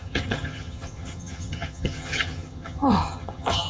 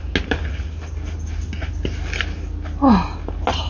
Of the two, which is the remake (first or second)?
first